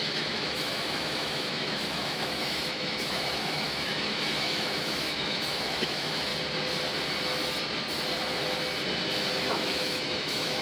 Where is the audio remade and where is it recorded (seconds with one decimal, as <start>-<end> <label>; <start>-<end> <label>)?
0.0-6.3 remade; 6.3-9.5 recorded; 9.5-10.6 remade